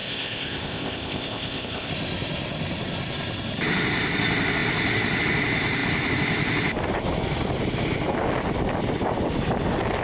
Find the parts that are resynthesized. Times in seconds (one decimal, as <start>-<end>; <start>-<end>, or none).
0.0-1.9